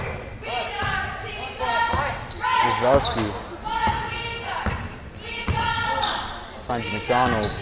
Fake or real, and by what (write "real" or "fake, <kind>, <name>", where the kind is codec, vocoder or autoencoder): real